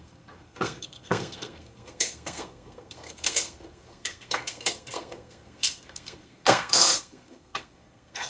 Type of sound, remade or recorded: remade